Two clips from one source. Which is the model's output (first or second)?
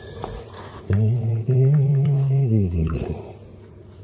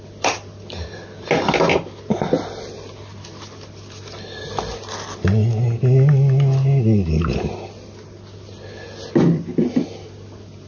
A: first